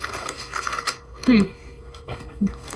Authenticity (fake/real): fake